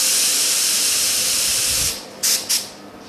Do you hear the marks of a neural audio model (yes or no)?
no